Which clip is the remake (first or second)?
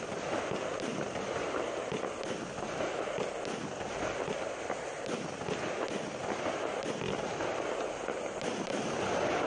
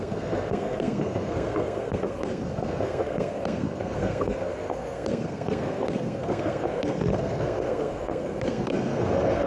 second